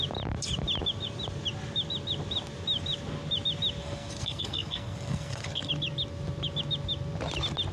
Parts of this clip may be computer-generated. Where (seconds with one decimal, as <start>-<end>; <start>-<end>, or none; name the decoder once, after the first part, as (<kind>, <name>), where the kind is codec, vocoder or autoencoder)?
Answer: 3.8-5.7 (codec, SNAC)